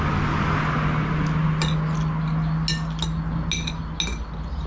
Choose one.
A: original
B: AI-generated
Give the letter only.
A